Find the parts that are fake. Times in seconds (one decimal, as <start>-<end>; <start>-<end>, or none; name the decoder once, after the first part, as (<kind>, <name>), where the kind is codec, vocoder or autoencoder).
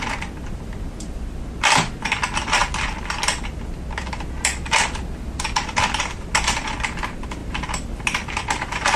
none